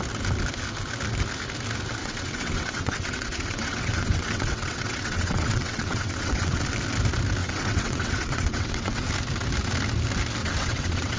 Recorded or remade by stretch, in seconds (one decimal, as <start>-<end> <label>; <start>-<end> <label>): 0.0-2.0 recorded; 2.0-6.6 remade; 6.6-7.4 recorded; 7.4-9.1 remade; 9.1-10.4 recorded; 10.4-11.2 remade